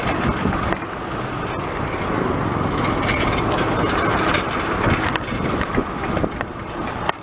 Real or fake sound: real